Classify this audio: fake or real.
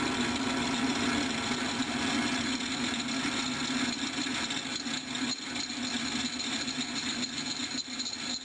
real